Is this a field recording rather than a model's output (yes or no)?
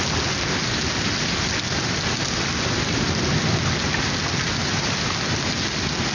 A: yes